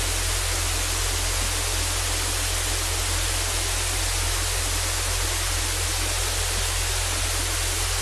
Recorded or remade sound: recorded